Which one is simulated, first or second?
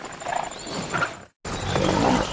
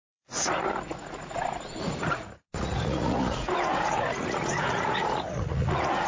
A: second